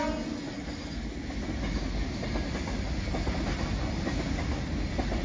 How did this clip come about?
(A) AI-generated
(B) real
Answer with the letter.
B